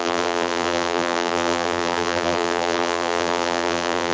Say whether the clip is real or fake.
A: fake